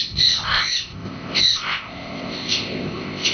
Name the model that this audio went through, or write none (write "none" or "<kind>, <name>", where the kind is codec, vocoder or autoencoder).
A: codec, ZipCodec